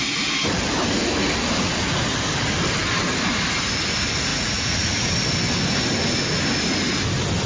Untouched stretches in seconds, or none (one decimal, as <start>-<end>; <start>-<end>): 0.0-4.3; 5.1-7.5